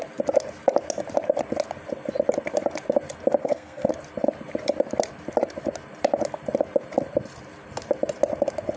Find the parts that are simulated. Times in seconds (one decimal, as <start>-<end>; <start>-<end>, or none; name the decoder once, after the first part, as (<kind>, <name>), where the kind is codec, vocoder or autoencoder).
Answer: 3.4-3.9 (codec, SNAC)